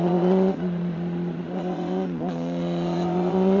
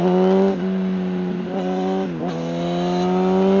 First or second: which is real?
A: second